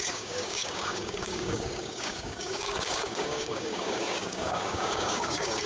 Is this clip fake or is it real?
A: fake